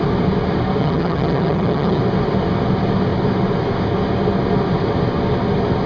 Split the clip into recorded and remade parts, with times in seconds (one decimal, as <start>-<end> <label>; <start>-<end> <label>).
0.0-0.8 recorded; 0.8-2.0 remade; 2.0-5.9 recorded